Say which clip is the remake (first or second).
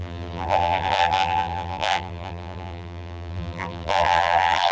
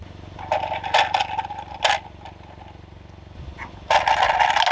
first